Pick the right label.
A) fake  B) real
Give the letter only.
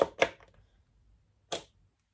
B